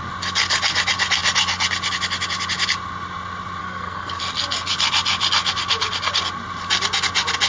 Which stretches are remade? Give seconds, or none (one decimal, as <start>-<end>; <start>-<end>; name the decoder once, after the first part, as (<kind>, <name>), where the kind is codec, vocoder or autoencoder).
3.6-4.2 (codec, SNAC)